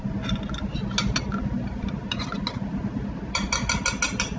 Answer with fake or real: real